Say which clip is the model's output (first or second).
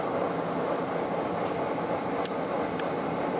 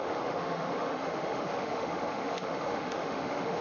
second